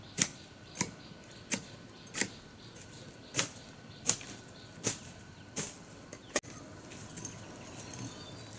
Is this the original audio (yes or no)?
yes